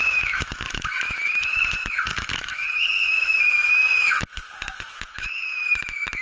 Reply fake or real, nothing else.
fake